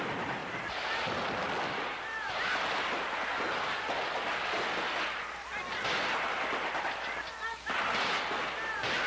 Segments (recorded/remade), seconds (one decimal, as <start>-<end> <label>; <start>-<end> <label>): 0.0-9.1 recorded